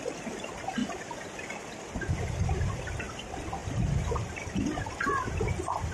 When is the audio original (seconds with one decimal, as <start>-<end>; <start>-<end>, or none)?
0.0-5.9